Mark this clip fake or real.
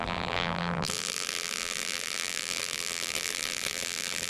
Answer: fake